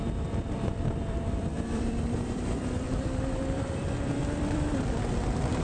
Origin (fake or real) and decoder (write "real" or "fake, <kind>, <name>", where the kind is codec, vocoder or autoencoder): fake, vocoder, BigVGAN v2